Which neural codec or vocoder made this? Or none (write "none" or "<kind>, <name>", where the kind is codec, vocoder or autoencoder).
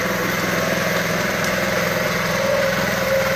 none